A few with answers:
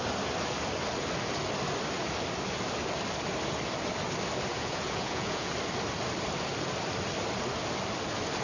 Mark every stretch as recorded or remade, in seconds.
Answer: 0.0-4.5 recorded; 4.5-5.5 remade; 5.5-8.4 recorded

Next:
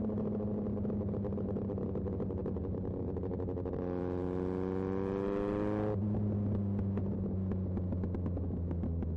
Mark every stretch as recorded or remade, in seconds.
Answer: 0.0-9.2 recorded

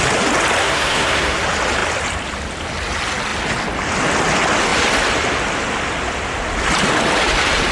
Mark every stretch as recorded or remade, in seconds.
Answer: 0.0-0.6 recorded; 0.6-1.4 remade; 1.4-7.7 recorded

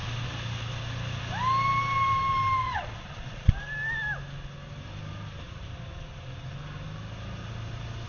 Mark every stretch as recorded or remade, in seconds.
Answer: 0.0-2.6 recorded; 2.6-3.5 remade; 3.5-8.1 recorded

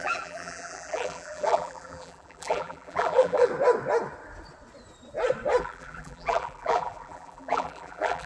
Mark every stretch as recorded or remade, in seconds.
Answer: 0.0-3.5 remade; 3.5-5.6 recorded; 5.6-8.3 remade

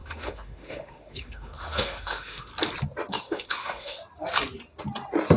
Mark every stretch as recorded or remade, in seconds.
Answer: 0.0-2.5 remade; 2.5-3.1 recorded; 3.1-4.0 remade; 4.0-5.4 recorded

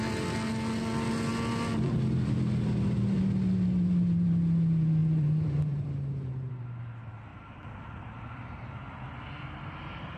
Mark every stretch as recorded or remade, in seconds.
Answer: 0.0-5.0 recorded; 5.0-6.5 remade; 6.5-7.3 recorded; 7.3-8.7 remade; 8.7-10.2 recorded